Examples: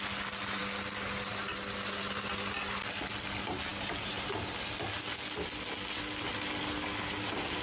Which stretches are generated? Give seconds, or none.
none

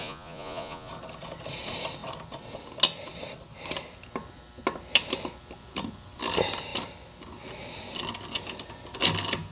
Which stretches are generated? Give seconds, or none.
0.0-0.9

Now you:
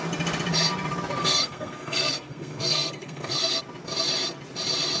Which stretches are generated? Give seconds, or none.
1.2-3.6

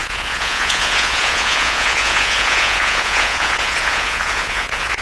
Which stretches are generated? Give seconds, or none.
0.0-5.0

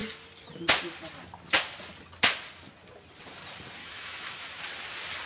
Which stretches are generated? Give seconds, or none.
3.8-4.6